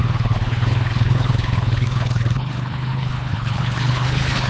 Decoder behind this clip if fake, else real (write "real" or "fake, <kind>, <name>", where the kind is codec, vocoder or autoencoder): fake, codec, HILCodec